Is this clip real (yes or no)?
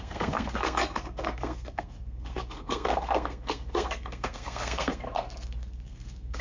no